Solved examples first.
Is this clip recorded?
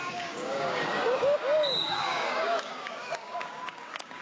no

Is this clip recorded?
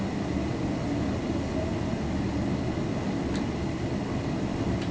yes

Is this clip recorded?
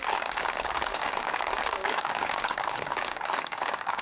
no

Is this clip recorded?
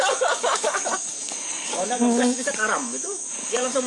no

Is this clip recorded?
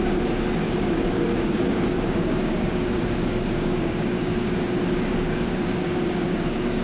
no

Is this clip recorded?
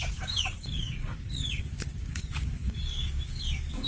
no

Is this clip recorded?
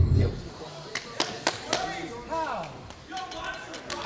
yes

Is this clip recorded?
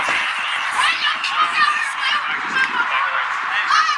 yes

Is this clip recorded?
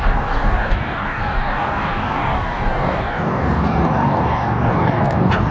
no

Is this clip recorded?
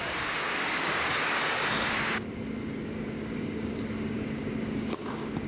no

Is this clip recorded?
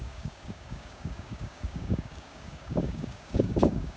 no